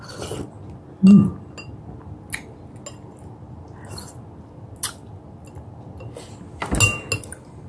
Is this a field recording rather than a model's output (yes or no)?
yes